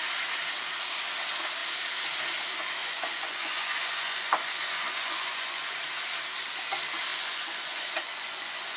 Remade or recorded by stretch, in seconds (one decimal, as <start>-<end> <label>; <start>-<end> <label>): 0.0-2.8 recorded; 2.8-5.8 remade; 5.8-7.1 recorded; 7.1-8.8 remade